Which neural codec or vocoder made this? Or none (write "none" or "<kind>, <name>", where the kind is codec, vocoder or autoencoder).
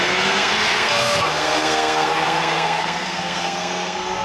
codec, SNAC